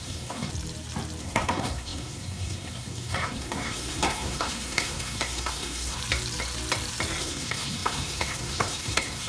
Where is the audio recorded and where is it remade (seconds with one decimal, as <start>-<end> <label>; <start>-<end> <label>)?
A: 0.0-0.5 remade; 0.5-1.2 recorded; 1.2-6.0 remade; 6.0-7.2 recorded; 7.2-9.3 remade